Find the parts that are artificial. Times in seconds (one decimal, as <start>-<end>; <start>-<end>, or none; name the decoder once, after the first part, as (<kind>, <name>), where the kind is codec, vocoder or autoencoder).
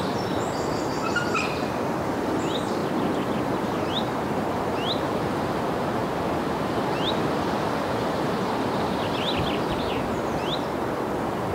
none